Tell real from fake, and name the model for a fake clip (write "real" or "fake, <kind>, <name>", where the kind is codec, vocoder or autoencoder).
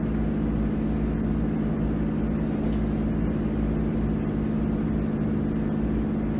real